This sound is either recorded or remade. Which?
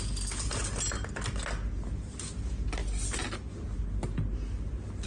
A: recorded